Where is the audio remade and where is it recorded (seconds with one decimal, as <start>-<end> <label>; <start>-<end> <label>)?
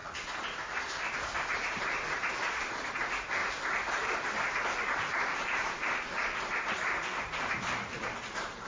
0.0-2.9 remade; 2.9-3.4 recorded; 3.4-7.2 remade; 7.2-8.7 recorded